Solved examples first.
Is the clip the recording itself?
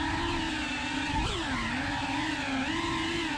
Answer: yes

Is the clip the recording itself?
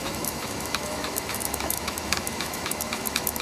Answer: no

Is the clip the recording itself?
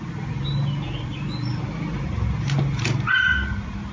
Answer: yes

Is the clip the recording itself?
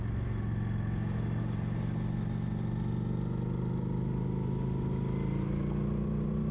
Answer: yes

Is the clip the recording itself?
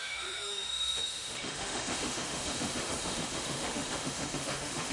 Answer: no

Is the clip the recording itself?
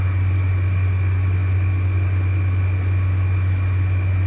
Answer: yes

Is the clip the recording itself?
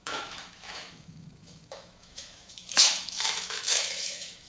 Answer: no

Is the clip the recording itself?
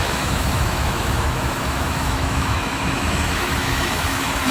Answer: no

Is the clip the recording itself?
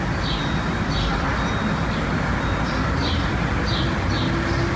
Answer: yes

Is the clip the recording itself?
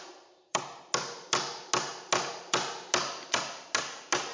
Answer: yes